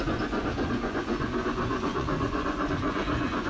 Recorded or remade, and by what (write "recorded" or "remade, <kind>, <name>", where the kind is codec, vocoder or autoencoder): remade, vocoder, Vocos